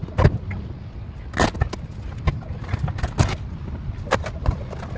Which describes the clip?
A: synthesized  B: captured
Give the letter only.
B